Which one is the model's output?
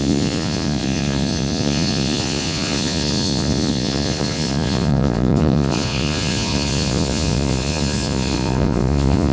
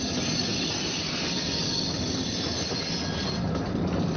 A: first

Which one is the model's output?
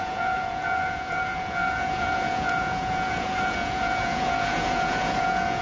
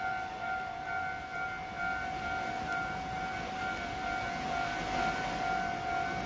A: first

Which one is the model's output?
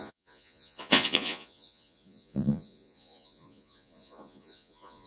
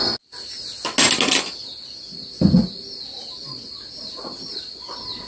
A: first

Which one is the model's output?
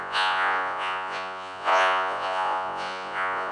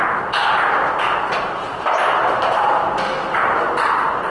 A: first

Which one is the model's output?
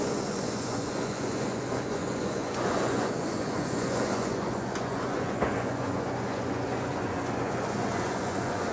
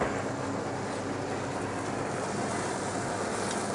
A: first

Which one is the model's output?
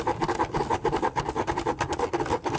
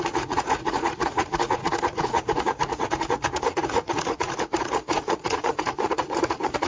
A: second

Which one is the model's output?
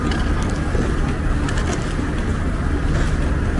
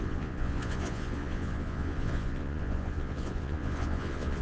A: second